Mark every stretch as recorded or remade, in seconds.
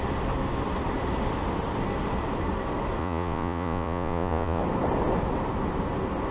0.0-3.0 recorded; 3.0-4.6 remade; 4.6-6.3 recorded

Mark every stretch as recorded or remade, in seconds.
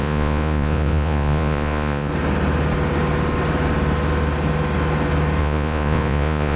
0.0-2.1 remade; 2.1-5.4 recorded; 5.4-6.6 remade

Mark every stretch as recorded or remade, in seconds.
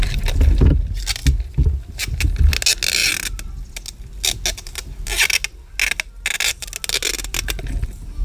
0.0-8.2 recorded